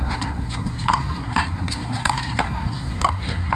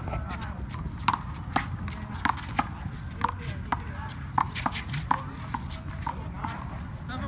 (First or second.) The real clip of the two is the second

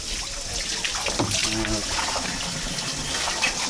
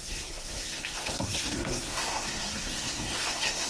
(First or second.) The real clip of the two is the first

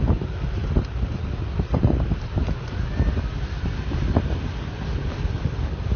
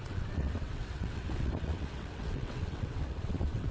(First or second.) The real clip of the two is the first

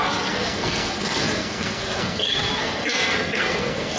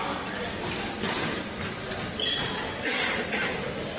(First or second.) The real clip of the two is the second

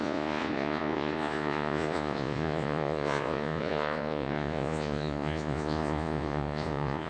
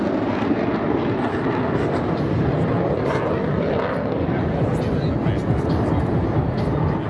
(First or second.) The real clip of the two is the second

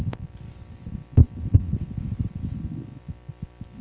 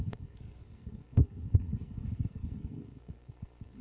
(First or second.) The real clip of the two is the first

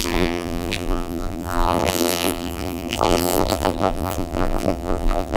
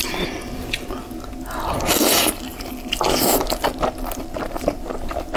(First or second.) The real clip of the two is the second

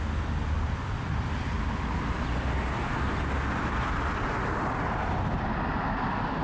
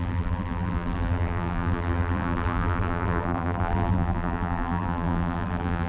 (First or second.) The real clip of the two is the first